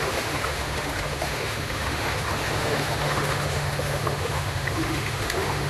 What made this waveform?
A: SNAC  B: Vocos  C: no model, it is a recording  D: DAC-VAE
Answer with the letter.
D